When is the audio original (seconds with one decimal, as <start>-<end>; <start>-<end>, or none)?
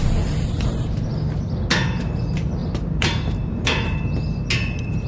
0.0-2.6; 4.1-5.1